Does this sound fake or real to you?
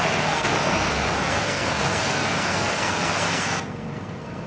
fake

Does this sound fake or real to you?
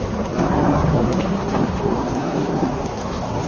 fake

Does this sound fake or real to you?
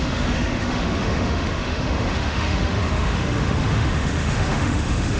fake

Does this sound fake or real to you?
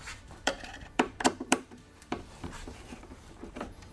fake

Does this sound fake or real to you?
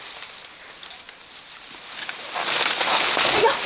real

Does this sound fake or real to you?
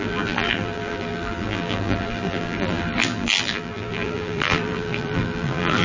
fake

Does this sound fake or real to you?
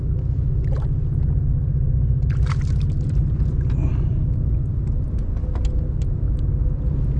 real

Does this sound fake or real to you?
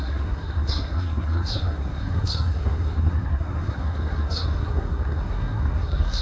fake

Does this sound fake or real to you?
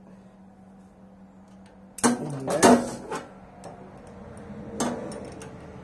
real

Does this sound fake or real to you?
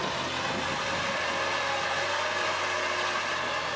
real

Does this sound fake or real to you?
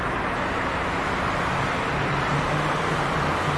fake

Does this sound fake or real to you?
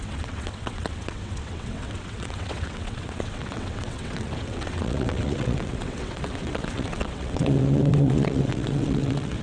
fake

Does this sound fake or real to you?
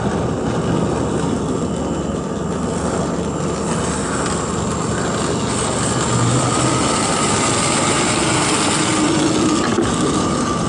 real